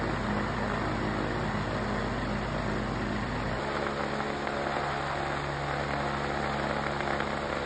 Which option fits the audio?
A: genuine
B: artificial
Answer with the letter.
A